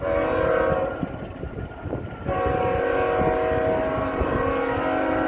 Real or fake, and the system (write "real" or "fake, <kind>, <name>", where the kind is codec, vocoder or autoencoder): real